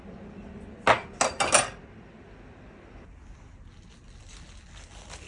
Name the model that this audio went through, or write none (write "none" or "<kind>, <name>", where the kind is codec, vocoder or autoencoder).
none